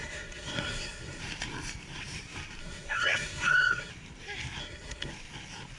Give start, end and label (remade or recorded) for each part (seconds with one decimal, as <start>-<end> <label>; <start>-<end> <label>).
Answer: 0.0-1.2 remade; 1.2-2.6 recorded; 2.6-3.9 remade; 3.9-4.6 recorded; 4.6-5.1 remade; 5.1-5.8 recorded